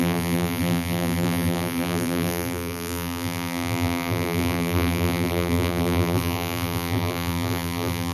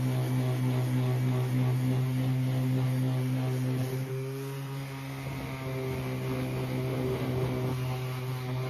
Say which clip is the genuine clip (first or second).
second